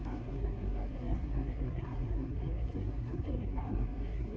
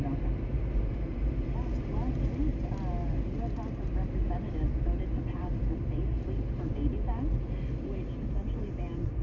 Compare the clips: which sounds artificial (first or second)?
first